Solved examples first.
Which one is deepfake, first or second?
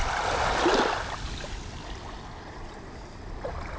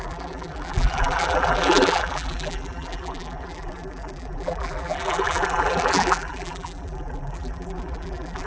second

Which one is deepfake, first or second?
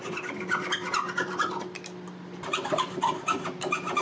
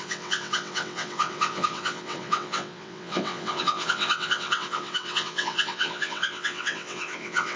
second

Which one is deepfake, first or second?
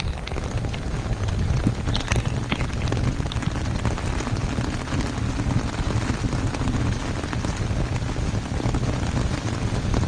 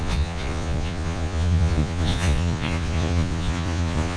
second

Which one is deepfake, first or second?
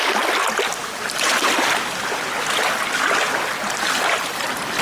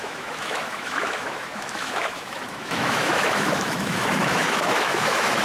second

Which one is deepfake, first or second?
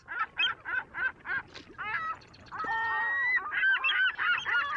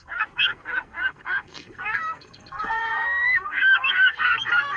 second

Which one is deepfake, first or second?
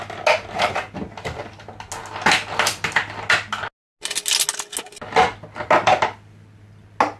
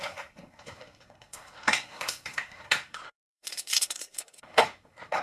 second